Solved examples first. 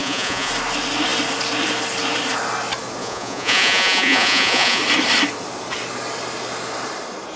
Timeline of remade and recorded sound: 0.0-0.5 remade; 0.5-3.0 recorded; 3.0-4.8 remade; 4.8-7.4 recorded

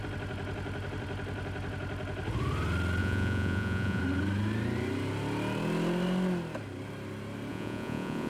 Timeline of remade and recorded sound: 0.0-3.0 recorded; 3.0-4.0 remade; 4.0-7.5 recorded; 7.5-8.3 remade

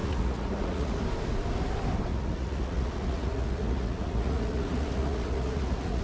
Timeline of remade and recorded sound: 0.0-1.0 remade; 1.0-2.1 recorded; 2.1-6.0 remade

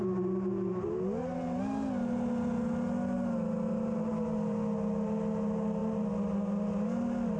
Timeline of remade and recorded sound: 0.0-7.4 recorded